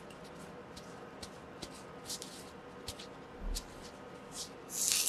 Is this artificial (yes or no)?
no